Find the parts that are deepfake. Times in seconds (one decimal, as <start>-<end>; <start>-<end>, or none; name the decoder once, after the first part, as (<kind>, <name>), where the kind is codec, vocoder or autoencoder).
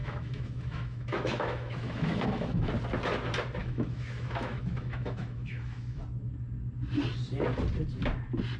0.0-2.7 (autoencoder, DAC-VAE); 3.6-6.0